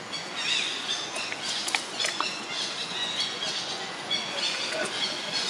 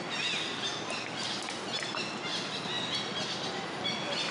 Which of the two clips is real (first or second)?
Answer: second